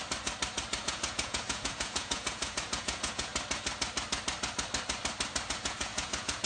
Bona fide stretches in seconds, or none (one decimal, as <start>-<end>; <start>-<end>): 0.0-0.8; 3.3-5.5